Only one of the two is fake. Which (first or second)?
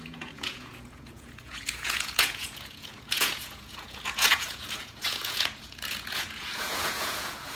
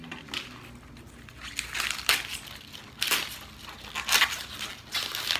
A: first